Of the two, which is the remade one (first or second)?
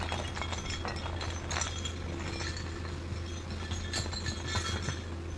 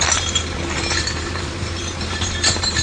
second